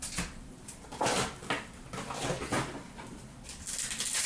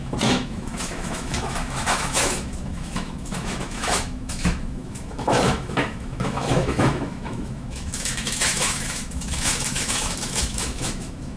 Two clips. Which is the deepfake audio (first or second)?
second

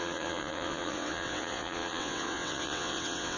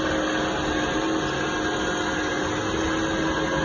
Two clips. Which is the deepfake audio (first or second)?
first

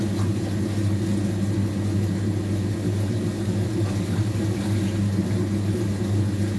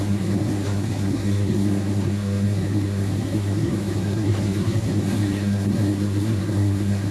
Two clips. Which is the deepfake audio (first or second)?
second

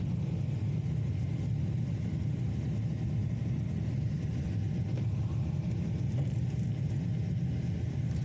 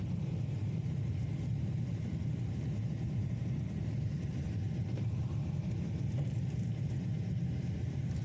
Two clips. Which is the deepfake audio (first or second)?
second